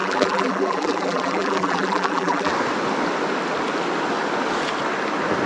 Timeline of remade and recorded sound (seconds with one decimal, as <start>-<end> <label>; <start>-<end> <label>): 0.0-2.5 remade; 2.5-5.5 recorded